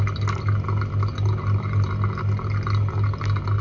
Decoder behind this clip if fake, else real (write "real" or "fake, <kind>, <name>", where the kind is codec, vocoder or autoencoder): real